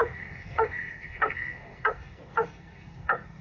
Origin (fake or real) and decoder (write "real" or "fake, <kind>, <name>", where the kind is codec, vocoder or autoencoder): fake, codec, SNAC